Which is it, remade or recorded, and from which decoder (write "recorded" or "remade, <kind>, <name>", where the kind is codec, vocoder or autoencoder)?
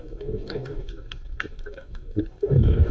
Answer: remade, codec, DAC